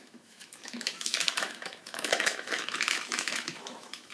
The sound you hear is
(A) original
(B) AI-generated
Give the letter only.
B